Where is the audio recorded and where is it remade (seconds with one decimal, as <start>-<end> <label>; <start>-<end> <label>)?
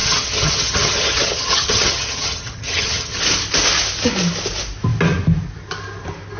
0.0-3.2 remade; 3.2-6.4 recorded